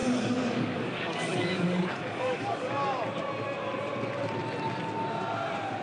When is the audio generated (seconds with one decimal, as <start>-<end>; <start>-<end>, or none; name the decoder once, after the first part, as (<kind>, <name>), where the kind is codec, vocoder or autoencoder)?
0.0-2.7 (codec, DAC)